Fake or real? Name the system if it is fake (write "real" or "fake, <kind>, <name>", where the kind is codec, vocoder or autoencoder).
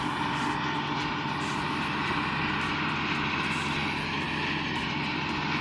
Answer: real